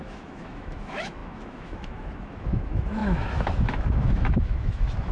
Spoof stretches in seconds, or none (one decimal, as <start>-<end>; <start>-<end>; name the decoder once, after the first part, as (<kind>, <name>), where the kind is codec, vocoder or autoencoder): 0.0-5.1 (autoencoder, DAC-VAE)